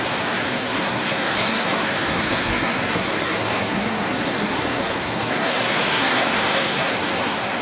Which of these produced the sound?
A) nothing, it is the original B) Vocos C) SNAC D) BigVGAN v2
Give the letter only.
C